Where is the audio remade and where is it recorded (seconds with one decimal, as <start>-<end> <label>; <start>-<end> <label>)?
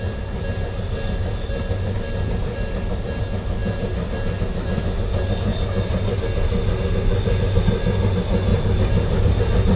0.0-8.5 recorded; 8.5-9.4 remade; 9.4-9.8 recorded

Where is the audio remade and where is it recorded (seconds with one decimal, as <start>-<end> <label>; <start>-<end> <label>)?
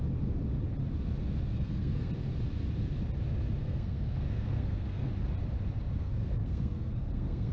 0.0-1.5 recorded; 1.5-2.1 remade; 2.1-3.6 recorded; 3.6-5.1 remade; 5.1-6.0 recorded; 6.0-7.5 remade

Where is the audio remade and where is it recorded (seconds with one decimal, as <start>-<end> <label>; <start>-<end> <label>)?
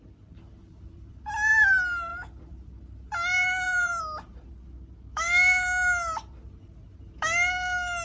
0.0-0.6 recorded; 0.6-1.2 remade; 1.2-2.1 recorded; 2.1-4.0 remade; 4.0-8.0 recorded